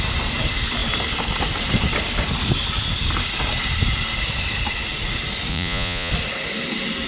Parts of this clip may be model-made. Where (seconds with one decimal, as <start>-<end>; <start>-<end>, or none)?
5.5-6.1